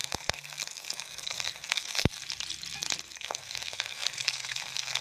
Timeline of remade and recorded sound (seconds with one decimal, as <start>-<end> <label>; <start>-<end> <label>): 0.0-2.1 remade; 2.1-3.0 recorded; 3.0-5.0 remade